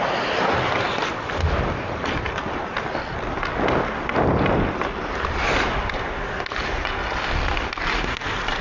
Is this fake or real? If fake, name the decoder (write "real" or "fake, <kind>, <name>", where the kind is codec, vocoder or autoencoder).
real